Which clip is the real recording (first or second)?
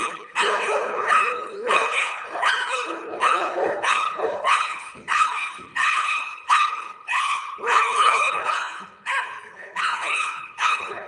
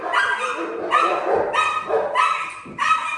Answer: second